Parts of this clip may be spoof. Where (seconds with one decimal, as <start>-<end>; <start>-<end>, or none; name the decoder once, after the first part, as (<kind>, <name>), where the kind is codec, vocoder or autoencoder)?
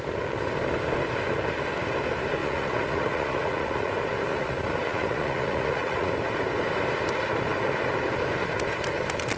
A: 2.4-3.9 (vocoder, Vocos); 4.3-6.1